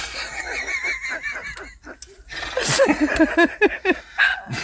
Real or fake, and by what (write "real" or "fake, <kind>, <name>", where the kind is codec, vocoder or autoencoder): real